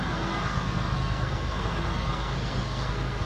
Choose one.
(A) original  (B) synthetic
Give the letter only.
B